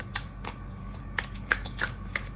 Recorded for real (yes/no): no